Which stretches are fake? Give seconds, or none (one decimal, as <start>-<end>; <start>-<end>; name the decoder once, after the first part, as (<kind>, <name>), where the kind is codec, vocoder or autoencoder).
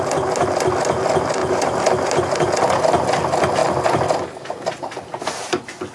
1.4-2.5 (vocoder, BigVGAN v2)